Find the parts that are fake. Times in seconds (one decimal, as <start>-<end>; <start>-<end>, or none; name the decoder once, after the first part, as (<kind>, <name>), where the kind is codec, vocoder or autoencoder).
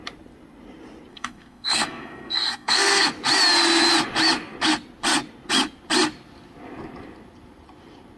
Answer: 1.1-3.1 (codec, SNAC)